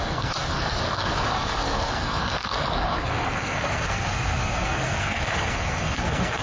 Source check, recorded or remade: remade